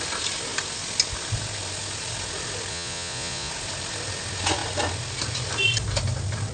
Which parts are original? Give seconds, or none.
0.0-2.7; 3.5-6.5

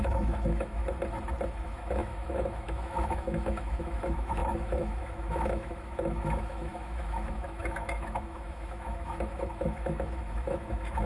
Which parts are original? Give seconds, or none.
0.8-1.6

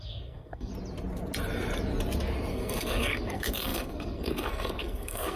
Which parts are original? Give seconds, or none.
0.7-2.5

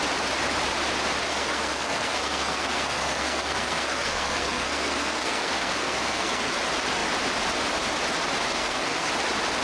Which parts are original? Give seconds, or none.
0.0-1.3; 6.5-8.5; 9.1-9.6

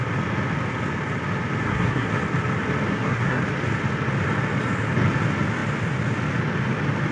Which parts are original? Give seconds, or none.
0.0-1.6; 2.1-2.9; 3.4-7.1

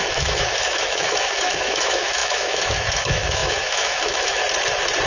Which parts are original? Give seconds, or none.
4.4-5.1

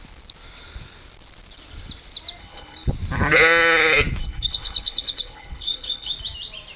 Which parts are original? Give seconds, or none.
0.0-2.4; 2.9-4.2; 6.1-6.8

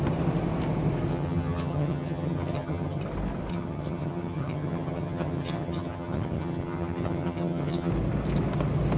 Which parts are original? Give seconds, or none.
0.0-1.1; 3.0-3.5; 7.9-9.0